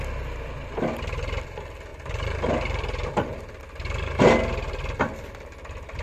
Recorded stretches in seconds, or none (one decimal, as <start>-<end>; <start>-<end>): 0.0-1.9; 3.6-6.0

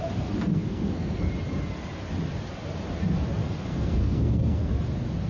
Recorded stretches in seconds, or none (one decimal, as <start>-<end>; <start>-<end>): 0.0-0.5; 1.3-3.4; 4.7-5.3

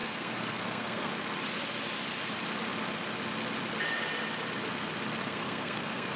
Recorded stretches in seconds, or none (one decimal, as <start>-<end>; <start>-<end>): 1.1-5.2

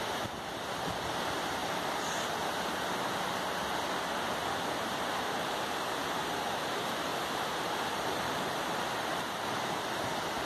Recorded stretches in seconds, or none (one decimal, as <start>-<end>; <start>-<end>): 1.6-4.7; 7.1-7.9

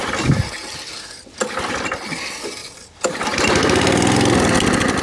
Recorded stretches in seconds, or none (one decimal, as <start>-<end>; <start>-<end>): 0.0-2.6

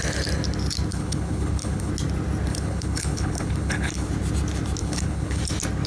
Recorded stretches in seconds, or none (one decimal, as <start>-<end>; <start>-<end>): 0.0-0.9; 1.9-2.5; 4.1-4.8; 5.4-5.9